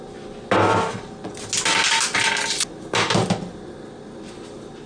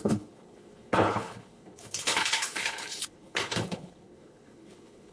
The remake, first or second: second